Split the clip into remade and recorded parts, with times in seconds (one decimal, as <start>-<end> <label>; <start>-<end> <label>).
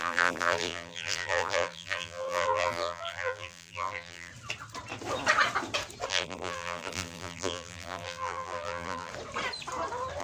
0.0-4.3 remade; 4.3-6.1 recorded; 6.1-9.1 remade; 9.1-10.2 recorded